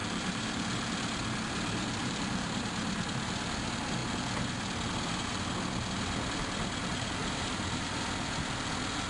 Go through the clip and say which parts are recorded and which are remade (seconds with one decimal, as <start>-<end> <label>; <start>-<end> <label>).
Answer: 0.0-2.0 recorded; 2.0-2.7 remade; 2.7-7.2 recorded; 7.2-7.9 remade; 7.9-9.1 recorded